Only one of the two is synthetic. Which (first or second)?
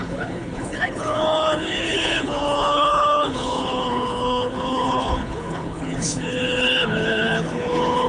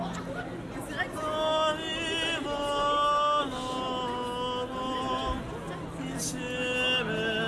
first